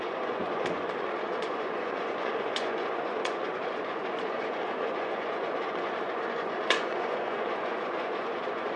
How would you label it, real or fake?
fake